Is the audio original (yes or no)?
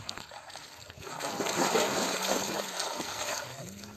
no